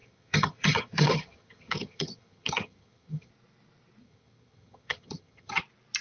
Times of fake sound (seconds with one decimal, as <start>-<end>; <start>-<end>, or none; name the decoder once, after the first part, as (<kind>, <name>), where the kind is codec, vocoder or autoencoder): 0.0-3.3 (vocoder, HiFi-GAN); 4.0-5.6